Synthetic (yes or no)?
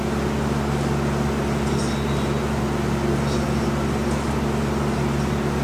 no